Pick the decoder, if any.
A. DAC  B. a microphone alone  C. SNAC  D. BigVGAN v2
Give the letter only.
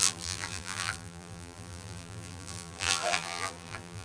D